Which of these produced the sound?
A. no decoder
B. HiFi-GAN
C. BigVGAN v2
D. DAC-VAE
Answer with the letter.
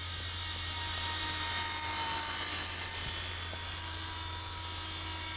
A